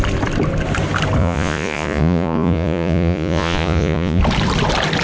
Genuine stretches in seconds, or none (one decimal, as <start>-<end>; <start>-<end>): 0.0-1.2; 4.2-5.0